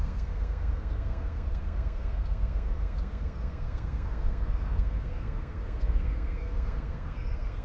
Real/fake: fake